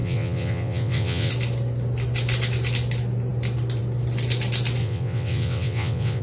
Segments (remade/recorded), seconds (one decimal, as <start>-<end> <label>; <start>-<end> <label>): 0.0-1.3 remade; 1.3-4.8 recorded; 4.8-6.2 remade